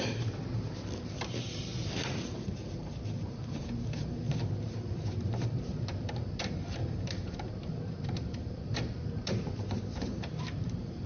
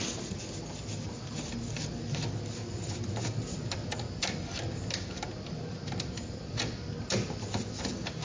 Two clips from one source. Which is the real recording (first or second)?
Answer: second